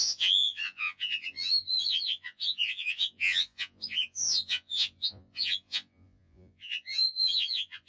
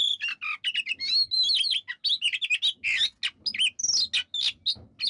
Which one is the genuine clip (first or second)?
second